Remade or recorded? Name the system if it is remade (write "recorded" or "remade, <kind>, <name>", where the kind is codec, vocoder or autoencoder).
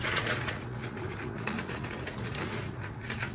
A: remade, vocoder, Vocos